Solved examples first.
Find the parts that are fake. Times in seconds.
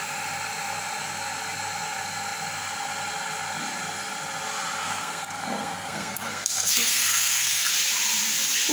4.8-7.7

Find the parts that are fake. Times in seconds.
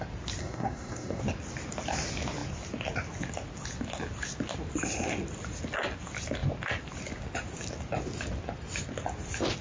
0.4-1.2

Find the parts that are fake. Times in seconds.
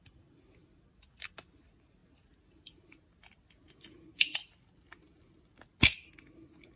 none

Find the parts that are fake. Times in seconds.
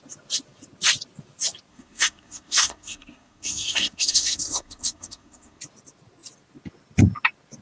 1.7-5.6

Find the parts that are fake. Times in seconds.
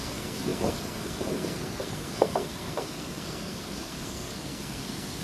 0.0-5.2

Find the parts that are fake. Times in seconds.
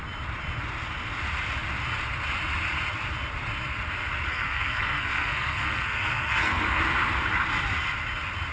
4.3-6.8